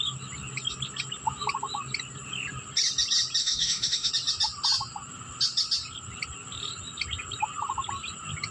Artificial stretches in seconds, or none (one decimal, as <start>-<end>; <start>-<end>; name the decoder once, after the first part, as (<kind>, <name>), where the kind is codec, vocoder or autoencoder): 3.4-4.1 (autoencoder, DAC-VAE)